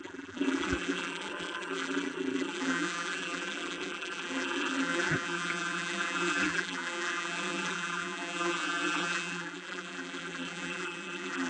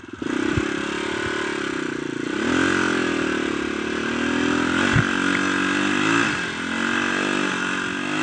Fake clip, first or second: first